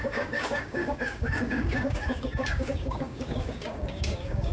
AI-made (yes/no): yes